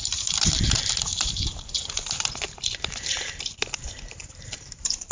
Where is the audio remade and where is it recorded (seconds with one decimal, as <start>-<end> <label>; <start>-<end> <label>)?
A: 0.0-5.1 remade